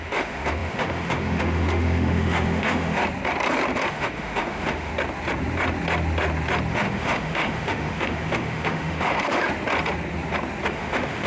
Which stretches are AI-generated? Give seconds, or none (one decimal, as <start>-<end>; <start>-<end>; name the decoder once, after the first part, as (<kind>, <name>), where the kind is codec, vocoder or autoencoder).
0.0-3.0 (autoencoder, DAC-VAE); 3.9-4.9; 6.7-9.4; 10.7-11.3